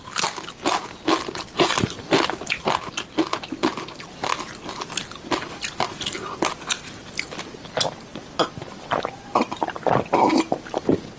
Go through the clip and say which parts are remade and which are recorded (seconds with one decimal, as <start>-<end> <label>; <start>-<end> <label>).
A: 0.0-11.2 recorded